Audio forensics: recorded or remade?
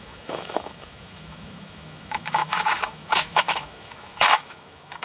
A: remade